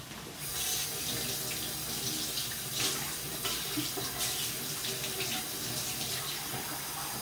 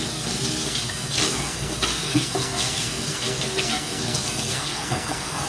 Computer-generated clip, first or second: second